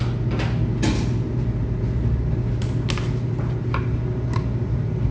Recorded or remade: recorded